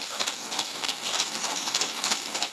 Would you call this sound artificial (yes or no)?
yes